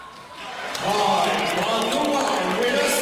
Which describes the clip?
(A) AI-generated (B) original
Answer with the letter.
A